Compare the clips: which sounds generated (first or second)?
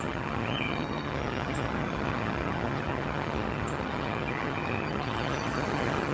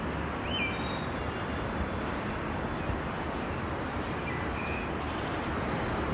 first